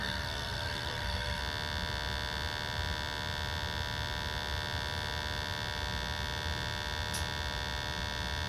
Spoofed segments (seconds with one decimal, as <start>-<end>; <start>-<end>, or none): 0.0-1.4